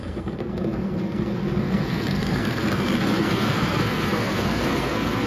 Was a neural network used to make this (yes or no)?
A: yes